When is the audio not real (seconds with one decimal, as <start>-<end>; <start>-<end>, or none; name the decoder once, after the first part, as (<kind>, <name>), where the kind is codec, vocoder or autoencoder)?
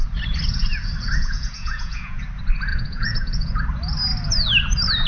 1.2-2.2 (vocoder, Vocos); 2.7-3.5